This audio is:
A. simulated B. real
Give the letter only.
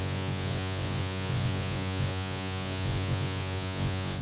A